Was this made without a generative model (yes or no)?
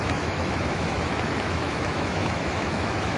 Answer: no